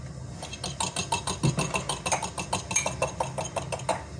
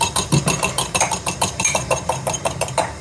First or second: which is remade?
second